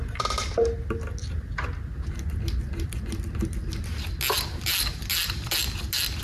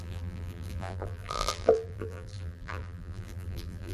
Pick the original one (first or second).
first